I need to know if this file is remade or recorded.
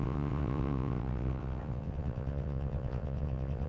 remade